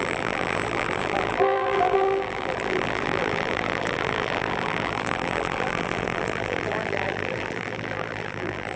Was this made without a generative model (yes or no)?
no